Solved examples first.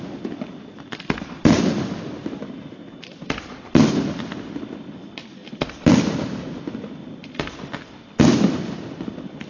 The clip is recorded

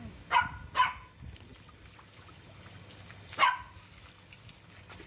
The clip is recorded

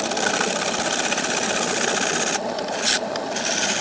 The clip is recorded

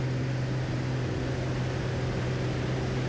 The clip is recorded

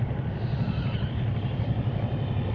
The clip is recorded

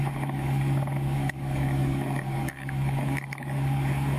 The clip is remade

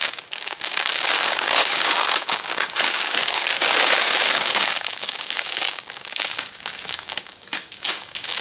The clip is remade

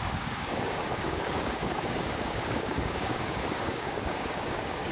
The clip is remade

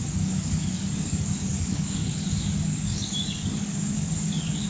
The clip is remade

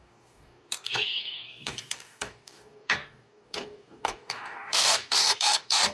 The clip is remade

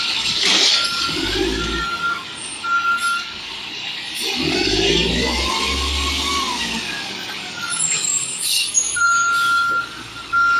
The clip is remade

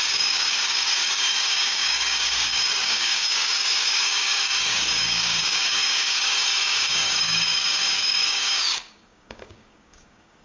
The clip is remade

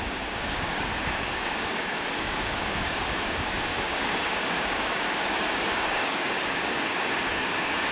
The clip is remade